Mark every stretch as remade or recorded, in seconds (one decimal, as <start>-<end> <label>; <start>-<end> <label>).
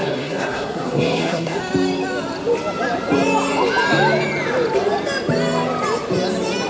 0.0-1.6 remade; 1.6-6.7 recorded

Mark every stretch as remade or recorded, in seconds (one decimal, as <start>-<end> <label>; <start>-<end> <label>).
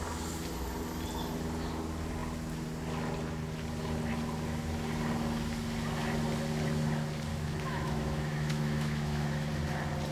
0.0-7.3 recorded; 7.3-9.5 remade; 9.5-10.1 recorded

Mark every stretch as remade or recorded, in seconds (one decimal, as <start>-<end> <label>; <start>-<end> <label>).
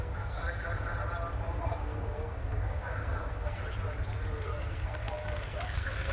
0.0-0.4 remade; 0.4-1.6 recorded; 1.6-3.6 remade; 3.6-4.4 recorded; 4.4-6.1 remade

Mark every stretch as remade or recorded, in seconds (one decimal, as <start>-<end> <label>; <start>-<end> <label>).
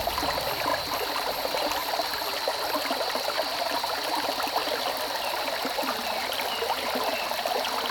0.0-7.9 recorded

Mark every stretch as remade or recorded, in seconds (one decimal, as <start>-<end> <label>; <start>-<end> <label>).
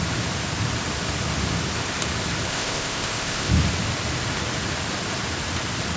0.0-2.5 recorded; 2.5-3.5 remade; 3.5-6.0 recorded